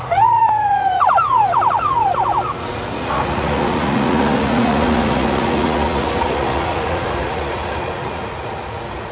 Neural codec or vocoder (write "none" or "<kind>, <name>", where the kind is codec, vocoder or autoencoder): vocoder, Vocos